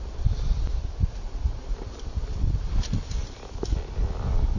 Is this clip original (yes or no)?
no